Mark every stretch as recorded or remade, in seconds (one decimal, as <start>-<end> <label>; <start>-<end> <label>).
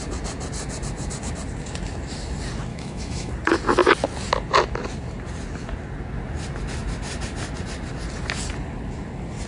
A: 0.0-2.7 recorded; 2.7-3.3 remade; 3.3-9.5 recorded